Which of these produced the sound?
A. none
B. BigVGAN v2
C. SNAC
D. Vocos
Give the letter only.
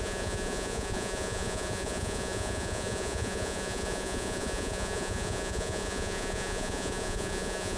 D